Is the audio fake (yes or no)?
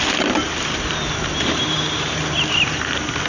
no